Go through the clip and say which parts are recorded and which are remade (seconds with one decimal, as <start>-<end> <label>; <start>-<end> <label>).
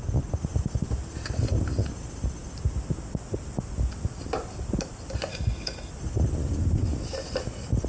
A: 0.0-5.3 recorded; 5.3-5.9 remade; 5.9-7.9 recorded